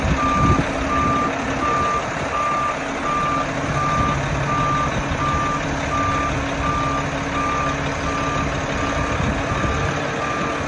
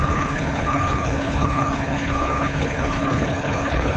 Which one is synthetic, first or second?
second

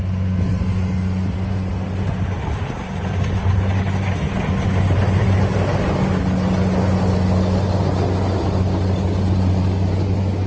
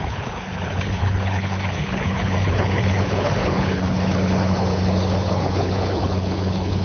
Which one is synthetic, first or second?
second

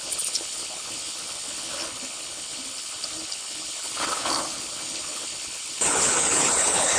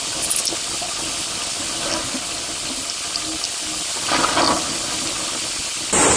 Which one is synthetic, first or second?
first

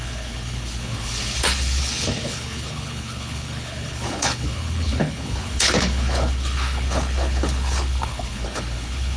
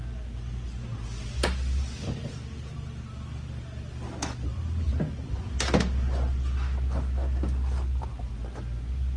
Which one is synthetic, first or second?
first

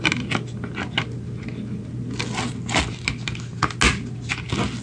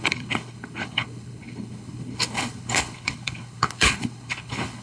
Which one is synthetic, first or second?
second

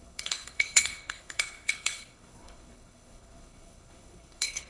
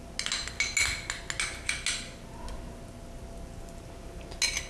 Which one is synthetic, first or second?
first